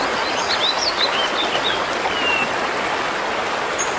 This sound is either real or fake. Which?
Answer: real